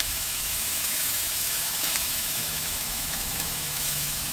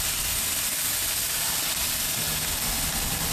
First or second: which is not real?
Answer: first